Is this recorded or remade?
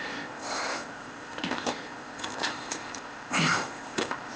remade